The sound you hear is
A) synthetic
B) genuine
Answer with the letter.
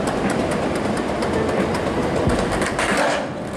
A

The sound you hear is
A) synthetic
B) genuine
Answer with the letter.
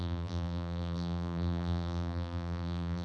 A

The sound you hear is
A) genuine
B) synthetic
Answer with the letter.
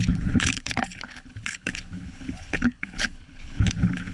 B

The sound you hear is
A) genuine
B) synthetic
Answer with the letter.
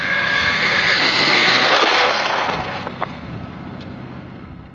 B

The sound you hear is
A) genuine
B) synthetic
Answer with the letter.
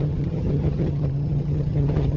B